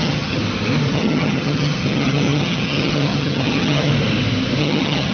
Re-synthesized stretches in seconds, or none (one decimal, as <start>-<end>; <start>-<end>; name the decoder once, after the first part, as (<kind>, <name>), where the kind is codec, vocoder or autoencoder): 0.0-0.4 (vocoder, HiFi-GAN); 0.9-3.9; 4.6-5.1